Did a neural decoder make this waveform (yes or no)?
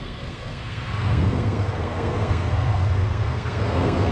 yes